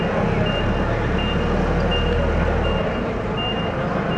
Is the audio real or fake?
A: real